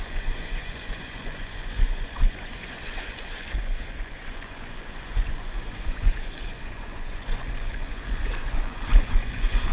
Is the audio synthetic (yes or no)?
yes